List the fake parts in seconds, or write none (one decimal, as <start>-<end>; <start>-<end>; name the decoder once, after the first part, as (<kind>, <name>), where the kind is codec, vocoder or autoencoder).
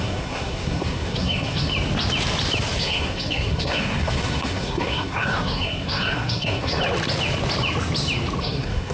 0.0-1.7 (codec, SNAC); 2.8-6.8; 8.4-8.9